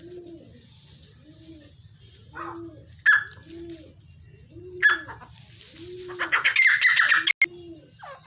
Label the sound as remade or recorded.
recorded